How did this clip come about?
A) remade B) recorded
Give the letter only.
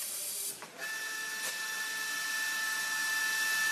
A